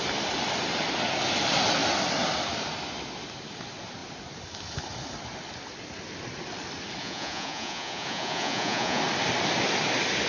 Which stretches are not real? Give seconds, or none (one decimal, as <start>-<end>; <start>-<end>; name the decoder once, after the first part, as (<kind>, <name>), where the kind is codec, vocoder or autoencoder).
7.0-9.0 (vocoder, Vocos)